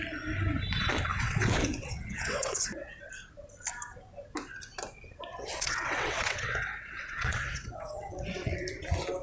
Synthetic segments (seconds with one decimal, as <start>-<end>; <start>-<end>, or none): 1.1-3.0; 5.3-8.6